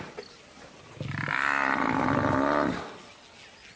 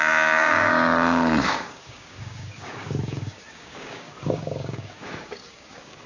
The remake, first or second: second